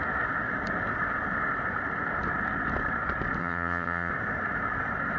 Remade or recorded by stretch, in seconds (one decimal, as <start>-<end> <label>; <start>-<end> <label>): 0.0-3.4 recorded; 3.4-4.1 remade; 4.1-5.2 recorded